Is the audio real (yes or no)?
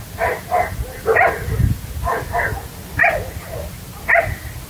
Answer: yes